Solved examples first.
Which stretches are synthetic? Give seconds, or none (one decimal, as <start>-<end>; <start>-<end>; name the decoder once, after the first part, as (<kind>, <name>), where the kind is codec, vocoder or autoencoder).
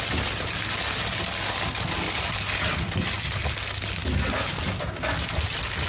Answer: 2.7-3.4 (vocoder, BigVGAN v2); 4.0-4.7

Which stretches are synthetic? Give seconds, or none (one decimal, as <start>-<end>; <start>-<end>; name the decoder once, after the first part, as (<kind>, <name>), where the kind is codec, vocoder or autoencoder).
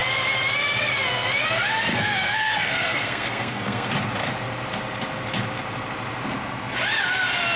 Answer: 1.9-3.9 (codec, SNAC)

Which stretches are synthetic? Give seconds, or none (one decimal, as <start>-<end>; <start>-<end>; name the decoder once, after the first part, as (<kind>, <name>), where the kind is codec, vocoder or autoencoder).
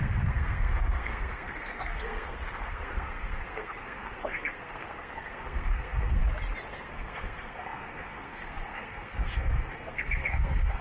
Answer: 0.0-6.2 (codec, SNAC); 6.7-10.8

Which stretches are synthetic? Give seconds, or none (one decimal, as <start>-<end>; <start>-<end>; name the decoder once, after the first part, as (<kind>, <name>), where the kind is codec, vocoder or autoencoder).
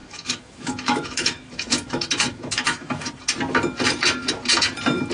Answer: 0.0-3.1 (autoencoder, DAC-VAE)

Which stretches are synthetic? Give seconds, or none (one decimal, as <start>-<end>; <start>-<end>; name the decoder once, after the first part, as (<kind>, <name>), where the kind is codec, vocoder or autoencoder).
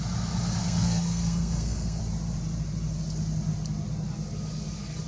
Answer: 0.6-2.0 (codec, SNAC)